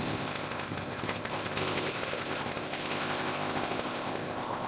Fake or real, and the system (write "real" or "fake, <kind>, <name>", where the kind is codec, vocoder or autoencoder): fake, codec, ZipCodec